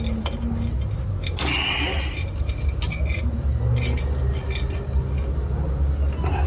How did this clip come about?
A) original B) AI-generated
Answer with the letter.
A